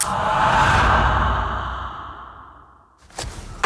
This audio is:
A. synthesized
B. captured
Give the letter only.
B